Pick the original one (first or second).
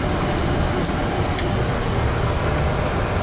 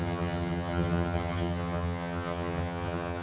first